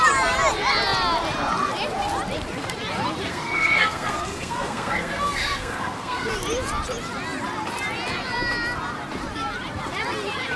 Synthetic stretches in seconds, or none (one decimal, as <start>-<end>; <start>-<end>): 3.3-6.3